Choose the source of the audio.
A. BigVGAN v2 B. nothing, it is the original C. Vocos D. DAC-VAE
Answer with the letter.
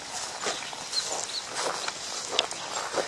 B